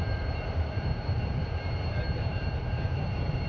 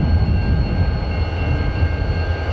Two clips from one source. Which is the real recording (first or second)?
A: second